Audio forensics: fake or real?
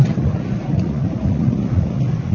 fake